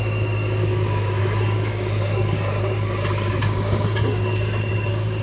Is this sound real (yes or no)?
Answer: no